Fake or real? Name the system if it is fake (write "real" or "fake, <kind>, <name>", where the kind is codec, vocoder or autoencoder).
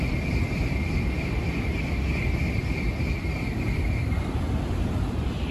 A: fake, vocoder, BigVGAN v2